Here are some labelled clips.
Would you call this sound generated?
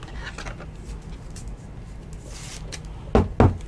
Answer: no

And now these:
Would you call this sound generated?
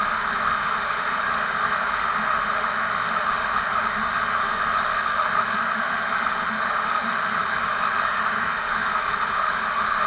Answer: yes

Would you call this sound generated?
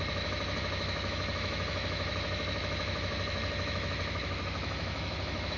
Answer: yes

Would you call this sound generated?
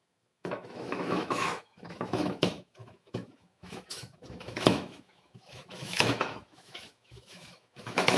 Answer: yes